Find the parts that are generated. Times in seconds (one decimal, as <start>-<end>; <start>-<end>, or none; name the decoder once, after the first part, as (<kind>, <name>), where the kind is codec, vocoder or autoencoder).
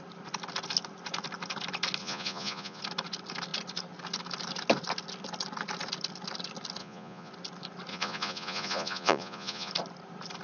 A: 2.0-2.8 (vocoder, Vocos); 6.8-7.3; 7.9-9.7